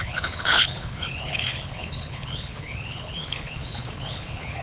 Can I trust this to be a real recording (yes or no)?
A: no